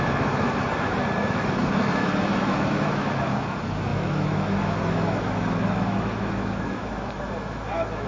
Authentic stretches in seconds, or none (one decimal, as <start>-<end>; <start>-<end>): none